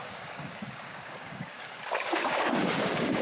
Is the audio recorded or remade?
remade